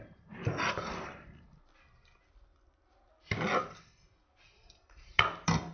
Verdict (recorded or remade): recorded